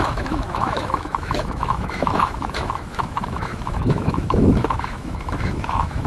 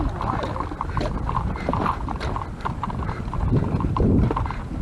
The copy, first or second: first